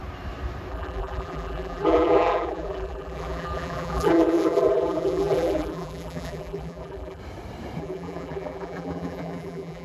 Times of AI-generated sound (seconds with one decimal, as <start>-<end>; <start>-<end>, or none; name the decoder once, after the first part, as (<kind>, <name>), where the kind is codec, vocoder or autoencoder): 0.7-7.2 (vocoder, BigVGAN v2); 7.8-9.8